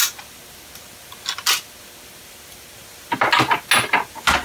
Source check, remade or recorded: recorded